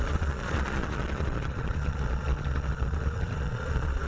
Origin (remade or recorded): remade